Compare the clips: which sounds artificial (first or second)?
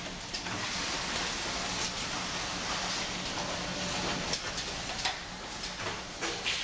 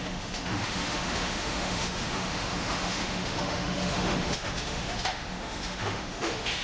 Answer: second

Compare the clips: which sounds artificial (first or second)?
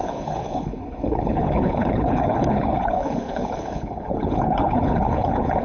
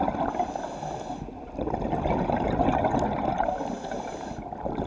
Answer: first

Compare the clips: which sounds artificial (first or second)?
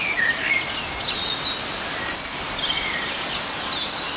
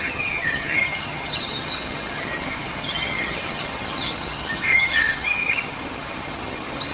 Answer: second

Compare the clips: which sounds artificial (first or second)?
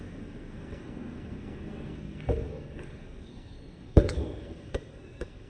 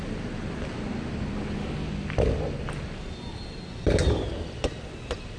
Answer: first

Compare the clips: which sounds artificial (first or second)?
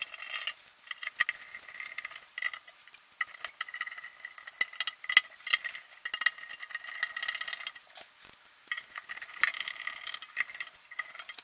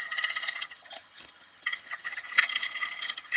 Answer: second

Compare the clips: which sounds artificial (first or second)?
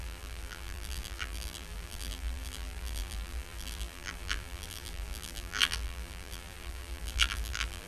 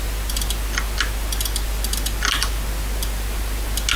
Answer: first